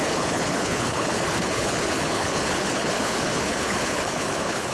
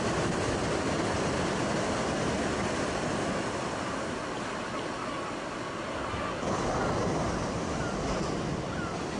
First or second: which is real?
second